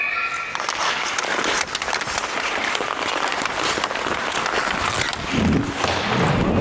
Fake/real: real